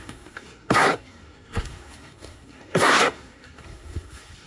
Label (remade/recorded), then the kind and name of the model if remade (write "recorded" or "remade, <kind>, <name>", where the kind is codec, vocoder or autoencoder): remade, codec, SNAC